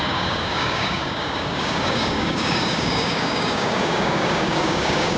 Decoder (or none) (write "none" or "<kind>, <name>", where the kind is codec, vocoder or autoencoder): codec, DAC